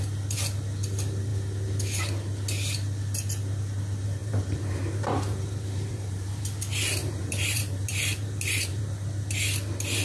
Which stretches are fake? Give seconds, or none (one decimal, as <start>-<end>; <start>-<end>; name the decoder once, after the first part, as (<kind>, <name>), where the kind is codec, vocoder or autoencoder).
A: 4.2-6.4 (vocoder, BigVGAN v2); 7.0-8.8